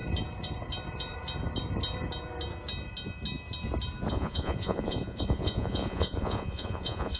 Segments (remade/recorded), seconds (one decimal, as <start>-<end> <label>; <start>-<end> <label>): 0.0-4.1 recorded; 4.1-7.2 remade